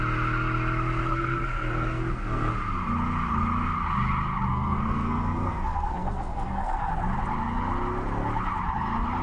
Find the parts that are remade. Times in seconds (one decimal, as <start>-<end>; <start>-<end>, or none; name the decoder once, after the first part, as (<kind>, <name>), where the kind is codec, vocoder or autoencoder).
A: 1.1-2.5 (codec, SNAC); 4.5-6.9